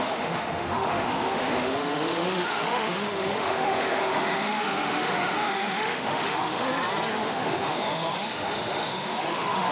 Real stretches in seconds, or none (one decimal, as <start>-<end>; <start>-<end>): 6.7-7.2